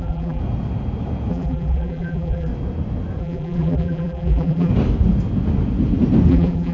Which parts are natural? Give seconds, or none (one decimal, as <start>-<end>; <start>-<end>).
0.4-1.3; 2.5-3.2; 4.7-6.3